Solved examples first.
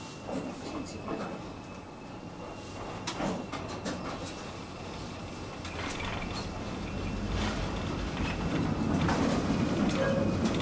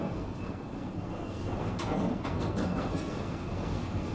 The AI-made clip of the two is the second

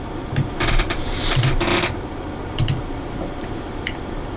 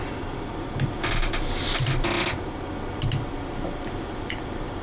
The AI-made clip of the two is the first